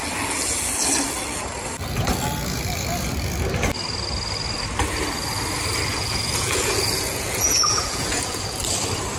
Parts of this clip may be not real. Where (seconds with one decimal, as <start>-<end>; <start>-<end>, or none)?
5.9-8.6